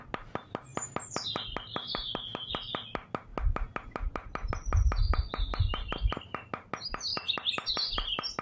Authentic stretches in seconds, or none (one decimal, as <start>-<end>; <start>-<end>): 0.0-8.4

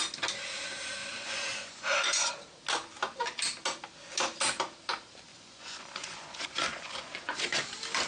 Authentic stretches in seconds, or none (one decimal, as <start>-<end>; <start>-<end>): 0.0-1.0; 2.3-5.3; 7.6-8.1

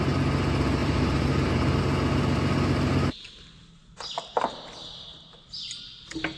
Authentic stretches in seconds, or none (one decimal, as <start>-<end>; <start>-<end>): 0.0-0.8; 1.8-6.4

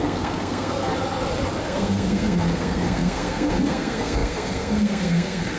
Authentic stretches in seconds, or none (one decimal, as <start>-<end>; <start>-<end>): 0.9-1.6

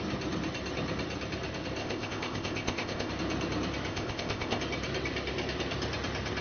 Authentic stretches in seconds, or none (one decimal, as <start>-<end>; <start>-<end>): 0.0-1.8; 3.1-3.9; 4.6-6.4

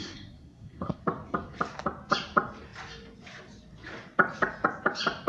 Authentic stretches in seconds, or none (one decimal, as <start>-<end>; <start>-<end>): 1.0-5.3

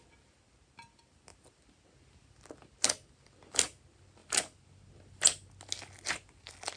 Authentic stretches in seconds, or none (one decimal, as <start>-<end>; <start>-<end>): 0.0-6.8

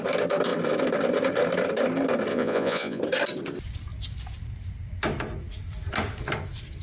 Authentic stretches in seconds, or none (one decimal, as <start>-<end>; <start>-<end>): 0.0-2.3; 3.0-6.8